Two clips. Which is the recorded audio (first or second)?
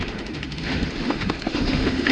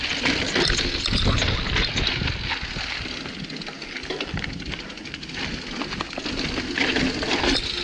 second